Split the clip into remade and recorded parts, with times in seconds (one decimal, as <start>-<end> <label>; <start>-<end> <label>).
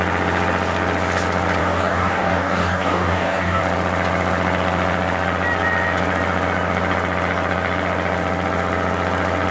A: 0.0-1.6 recorded; 1.6-3.6 remade; 3.6-9.5 recorded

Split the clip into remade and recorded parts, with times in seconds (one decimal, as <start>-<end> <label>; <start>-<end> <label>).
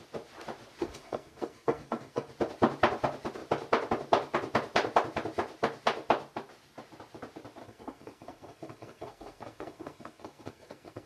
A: 0.0-0.8 recorded; 0.8-2.3 remade; 2.3-7.6 recorded; 7.6-11.1 remade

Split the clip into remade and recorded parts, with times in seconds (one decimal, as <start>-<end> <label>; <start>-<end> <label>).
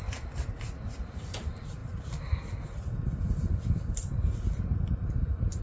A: 0.0-5.6 recorded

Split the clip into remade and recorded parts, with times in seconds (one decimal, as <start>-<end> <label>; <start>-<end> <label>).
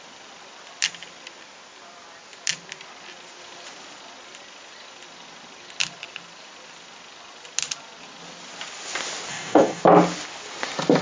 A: 0.0-9.3 recorded; 9.3-9.8 remade; 9.8-11.0 recorded